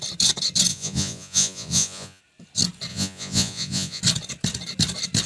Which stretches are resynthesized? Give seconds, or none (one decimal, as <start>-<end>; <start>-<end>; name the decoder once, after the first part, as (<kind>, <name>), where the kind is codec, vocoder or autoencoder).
0.7-2.2 (vocoder, Vocos); 2.9-4.0